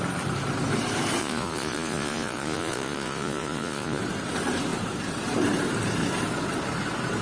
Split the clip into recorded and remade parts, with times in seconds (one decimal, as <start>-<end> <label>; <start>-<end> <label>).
0.0-1.2 recorded; 1.2-4.0 remade; 4.0-7.2 recorded